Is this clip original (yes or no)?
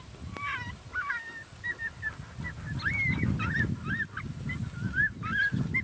yes